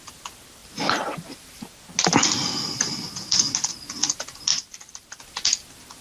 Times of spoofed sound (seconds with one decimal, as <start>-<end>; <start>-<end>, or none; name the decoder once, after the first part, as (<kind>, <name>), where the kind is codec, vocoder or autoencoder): 0.6-1.6 (vocoder, BigVGAN v2); 4.5-5.2